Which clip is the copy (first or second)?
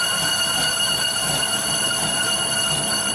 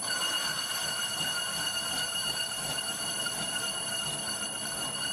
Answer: second